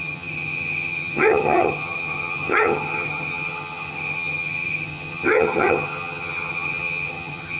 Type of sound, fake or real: fake